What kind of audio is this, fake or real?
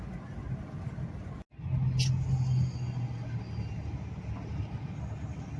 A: real